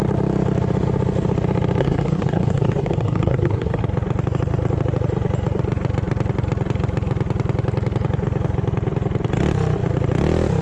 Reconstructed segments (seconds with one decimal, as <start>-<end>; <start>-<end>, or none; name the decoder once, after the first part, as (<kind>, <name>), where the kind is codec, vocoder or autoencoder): 1.8-3.8 (codec, SNAC)